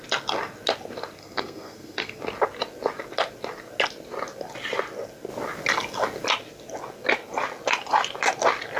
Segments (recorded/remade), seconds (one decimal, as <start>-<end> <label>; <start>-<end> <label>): 0.0-1.2 recorded; 1.2-2.2 remade; 2.2-8.8 recorded